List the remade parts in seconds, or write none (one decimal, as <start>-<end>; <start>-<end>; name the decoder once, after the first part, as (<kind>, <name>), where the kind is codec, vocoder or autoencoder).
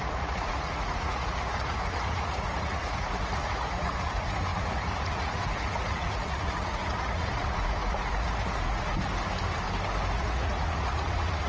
0.0-9.1 (vocoder, Vocos); 10.1-11.5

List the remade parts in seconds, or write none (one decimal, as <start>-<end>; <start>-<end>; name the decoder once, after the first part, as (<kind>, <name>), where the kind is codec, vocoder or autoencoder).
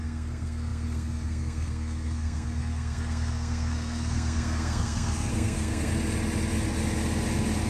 0.0-5.9 (codec, SNAC)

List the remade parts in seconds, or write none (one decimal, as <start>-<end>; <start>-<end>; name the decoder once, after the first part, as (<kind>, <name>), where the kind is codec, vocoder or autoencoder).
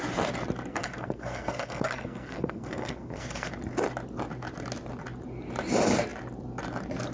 0.7-3.5 (codec, SNAC)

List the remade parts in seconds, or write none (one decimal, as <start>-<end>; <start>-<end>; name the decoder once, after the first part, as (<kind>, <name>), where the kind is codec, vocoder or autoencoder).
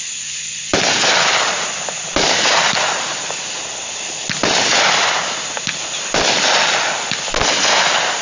none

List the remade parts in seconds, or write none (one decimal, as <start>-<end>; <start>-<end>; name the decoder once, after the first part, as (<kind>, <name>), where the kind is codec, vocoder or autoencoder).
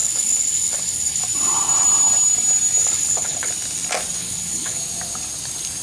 0.0-1.2 (codec, HILCodec); 2.8-3.5; 4.2-4.8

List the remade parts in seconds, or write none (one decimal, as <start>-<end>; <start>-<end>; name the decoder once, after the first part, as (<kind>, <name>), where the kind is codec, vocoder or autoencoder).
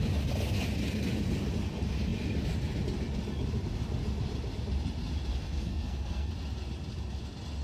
5.3-6.3 (codec, SNAC)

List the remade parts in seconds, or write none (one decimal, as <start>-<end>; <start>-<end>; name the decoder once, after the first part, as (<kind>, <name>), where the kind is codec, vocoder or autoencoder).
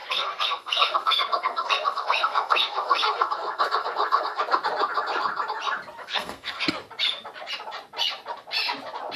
0.0-4.4 (codec, SNAC); 6.0-6.6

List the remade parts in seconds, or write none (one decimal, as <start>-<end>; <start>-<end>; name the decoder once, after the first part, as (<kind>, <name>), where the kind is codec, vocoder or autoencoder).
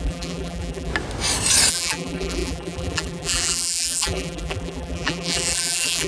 0.0-0.9 (vocoder, BigVGAN v2); 1.7-6.1